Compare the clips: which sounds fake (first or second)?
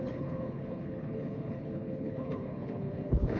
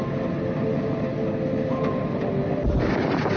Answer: first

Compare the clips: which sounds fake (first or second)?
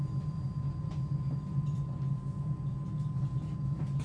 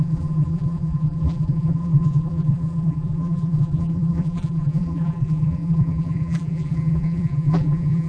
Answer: second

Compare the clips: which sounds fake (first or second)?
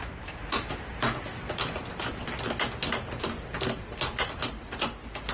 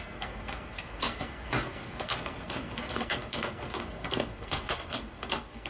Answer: second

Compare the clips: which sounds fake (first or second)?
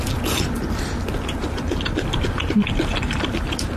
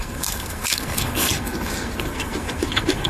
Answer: second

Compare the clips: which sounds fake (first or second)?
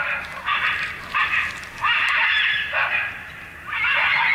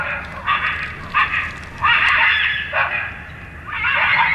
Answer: first